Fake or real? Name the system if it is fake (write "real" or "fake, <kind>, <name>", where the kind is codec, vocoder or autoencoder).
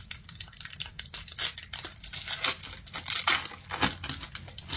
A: real